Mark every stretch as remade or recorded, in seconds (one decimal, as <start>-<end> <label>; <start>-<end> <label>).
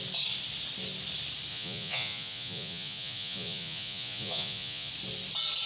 0.0-1.5 recorded; 1.5-4.9 remade; 4.9-5.7 recorded